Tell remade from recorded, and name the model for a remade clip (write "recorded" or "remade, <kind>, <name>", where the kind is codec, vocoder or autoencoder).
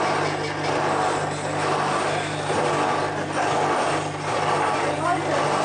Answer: recorded